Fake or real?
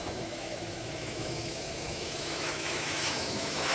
fake